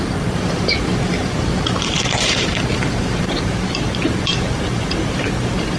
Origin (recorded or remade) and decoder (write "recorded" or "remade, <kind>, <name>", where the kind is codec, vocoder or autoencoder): remade, vocoder, BigVGAN v2